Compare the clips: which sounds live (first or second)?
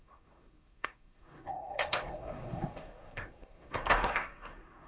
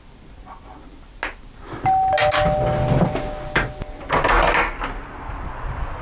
second